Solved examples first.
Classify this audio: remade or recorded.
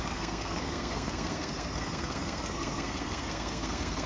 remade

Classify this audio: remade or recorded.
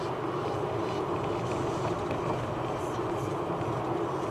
recorded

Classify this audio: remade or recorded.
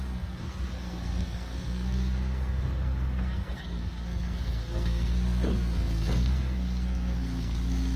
remade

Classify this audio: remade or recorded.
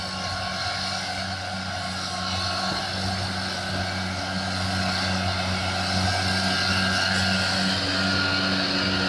recorded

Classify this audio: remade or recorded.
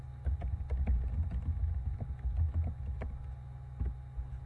recorded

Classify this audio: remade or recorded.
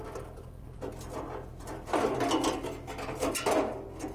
recorded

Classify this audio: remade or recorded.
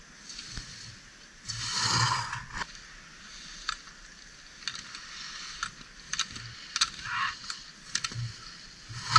recorded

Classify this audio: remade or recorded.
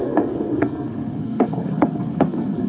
remade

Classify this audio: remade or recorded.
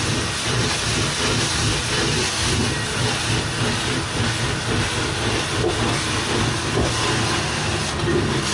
recorded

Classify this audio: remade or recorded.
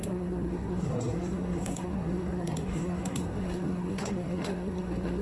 remade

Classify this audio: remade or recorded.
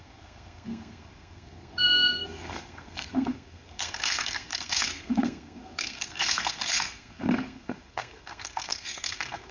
remade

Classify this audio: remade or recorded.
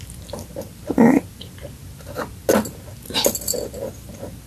recorded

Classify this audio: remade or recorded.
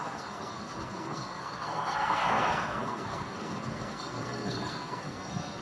remade